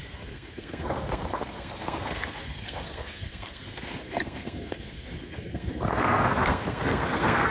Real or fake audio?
fake